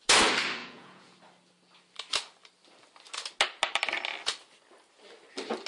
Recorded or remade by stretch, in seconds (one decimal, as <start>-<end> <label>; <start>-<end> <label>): 0.0-0.6 recorded; 0.6-1.2 remade; 1.2-5.7 recorded